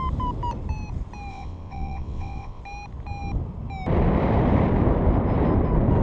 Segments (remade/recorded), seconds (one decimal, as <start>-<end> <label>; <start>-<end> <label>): 0.0-1.3 recorded; 1.3-2.6 remade; 2.6-6.0 recorded